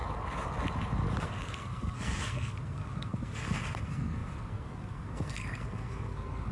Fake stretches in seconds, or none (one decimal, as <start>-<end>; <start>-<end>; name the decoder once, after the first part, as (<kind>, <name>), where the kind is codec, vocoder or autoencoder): 1.2-6.5 (codec, SNAC)